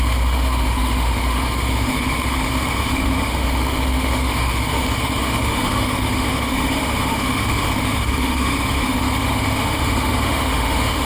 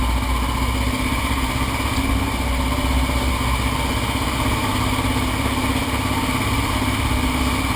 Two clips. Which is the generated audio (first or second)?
first